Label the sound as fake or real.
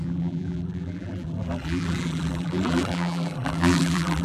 fake